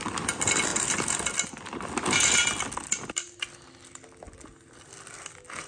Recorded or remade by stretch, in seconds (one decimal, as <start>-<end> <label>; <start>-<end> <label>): 0.0-5.7 recorded